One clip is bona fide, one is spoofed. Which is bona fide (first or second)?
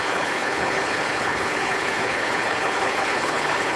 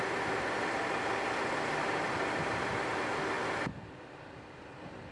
second